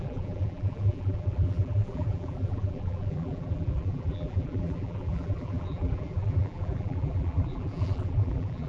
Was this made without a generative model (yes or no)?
no